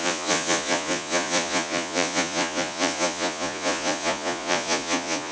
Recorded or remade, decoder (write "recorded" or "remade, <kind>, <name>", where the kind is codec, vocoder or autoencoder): remade, vocoder, Vocos